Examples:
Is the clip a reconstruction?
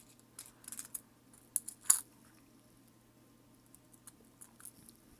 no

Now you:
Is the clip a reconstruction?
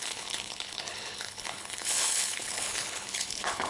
yes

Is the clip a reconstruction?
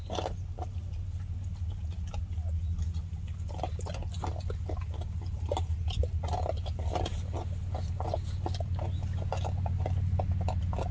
no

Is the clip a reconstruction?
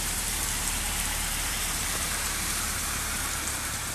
yes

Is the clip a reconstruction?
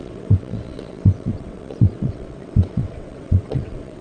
yes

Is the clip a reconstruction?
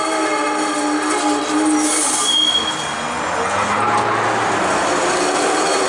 no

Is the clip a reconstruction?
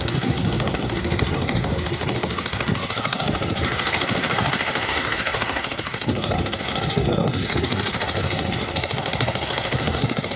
yes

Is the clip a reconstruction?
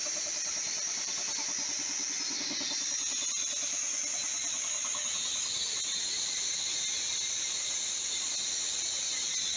no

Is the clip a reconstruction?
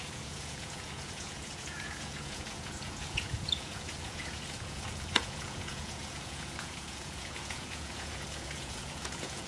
yes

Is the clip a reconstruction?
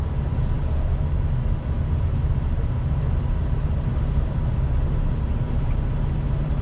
yes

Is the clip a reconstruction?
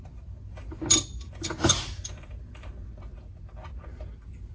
no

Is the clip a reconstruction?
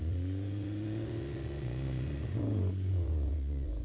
yes